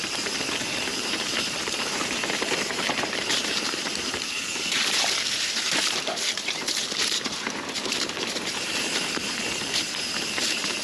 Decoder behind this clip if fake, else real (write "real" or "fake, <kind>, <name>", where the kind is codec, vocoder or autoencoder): fake, vocoder, BigVGAN v2